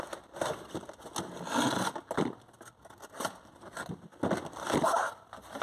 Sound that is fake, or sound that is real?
real